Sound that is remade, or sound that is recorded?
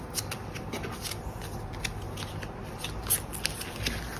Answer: recorded